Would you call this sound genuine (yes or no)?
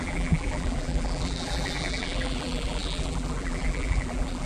no